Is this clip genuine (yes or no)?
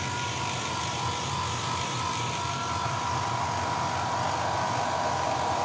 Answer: yes